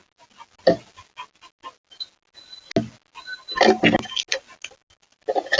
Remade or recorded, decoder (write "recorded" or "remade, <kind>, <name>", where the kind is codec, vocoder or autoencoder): recorded